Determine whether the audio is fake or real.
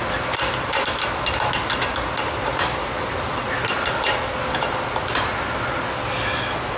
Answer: real